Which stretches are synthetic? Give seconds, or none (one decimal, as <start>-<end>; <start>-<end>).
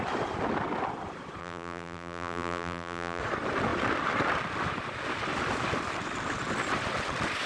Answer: 1.4-3.2